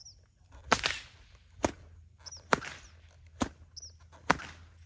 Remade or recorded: recorded